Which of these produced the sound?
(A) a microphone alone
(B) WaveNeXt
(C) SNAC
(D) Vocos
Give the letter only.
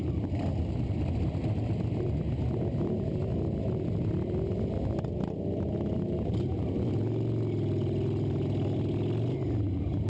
A